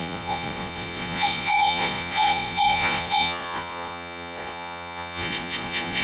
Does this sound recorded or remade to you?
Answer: remade